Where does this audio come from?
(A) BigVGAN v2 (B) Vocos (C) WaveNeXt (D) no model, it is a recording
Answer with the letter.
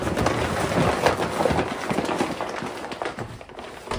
D